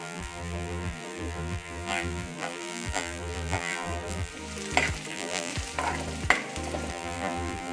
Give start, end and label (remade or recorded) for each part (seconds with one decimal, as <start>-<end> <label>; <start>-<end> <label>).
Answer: 0.0-4.3 remade; 4.3-5.1 recorded; 5.1-5.5 remade; 5.5-6.9 recorded; 6.9-7.7 remade

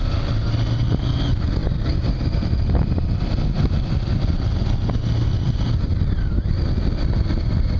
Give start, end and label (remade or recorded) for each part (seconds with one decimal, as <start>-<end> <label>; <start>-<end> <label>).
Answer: 0.0-7.8 recorded

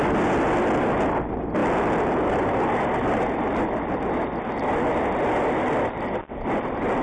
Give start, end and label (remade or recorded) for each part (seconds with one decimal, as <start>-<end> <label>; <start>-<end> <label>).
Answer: 0.0-7.0 recorded